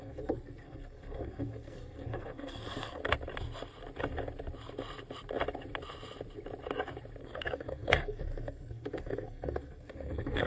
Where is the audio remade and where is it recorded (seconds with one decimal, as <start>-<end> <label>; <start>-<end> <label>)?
0.0-3.0 remade; 3.0-7.2 recorded; 7.2-10.5 remade